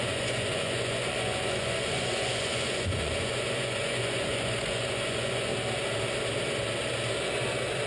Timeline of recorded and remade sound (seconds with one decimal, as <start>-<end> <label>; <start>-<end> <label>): 0.0-5.5 remade; 5.5-7.9 recorded